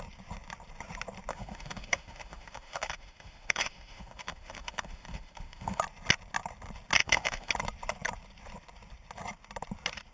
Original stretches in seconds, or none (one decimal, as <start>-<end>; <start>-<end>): 0.0-1.3; 5.8-7.0; 7.5-10.1

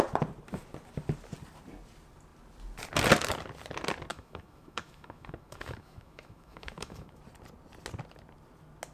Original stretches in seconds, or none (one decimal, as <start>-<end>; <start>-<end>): 0.0-4.1; 7.2-8.9

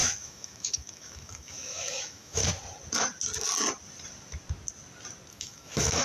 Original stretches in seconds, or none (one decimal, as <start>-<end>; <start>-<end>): 2.4-5.3

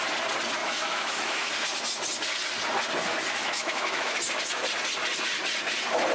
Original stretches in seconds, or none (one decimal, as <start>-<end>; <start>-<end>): 0.0-0.6; 1.5-3.4; 4.2-6.1

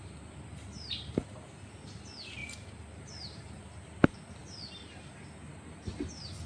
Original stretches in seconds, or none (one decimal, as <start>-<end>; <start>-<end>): 0.0-6.5